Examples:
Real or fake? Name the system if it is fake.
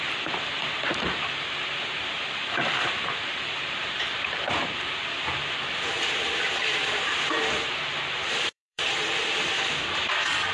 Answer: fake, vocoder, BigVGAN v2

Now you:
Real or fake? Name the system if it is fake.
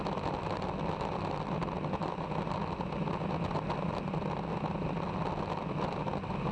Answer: real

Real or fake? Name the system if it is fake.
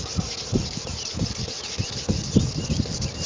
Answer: real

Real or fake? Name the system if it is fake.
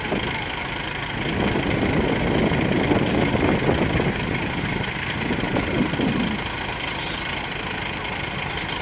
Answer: real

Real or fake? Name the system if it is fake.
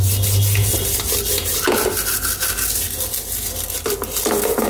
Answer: real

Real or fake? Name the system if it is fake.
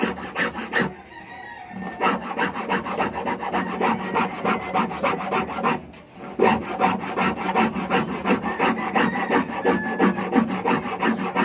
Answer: real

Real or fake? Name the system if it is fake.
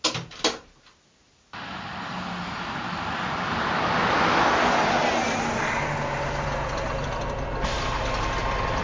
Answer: real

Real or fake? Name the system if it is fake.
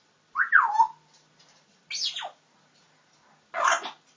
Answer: real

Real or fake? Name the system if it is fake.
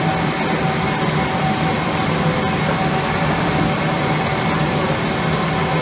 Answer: real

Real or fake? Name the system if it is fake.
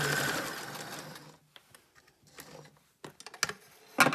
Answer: real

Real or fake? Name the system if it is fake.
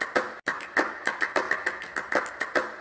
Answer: real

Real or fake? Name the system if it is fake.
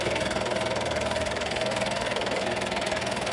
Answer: fake, codec, SNAC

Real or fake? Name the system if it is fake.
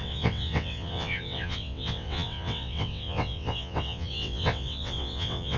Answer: fake, vocoder, WaveNeXt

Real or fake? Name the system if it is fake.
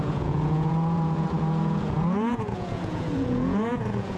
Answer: fake, vocoder, Vocos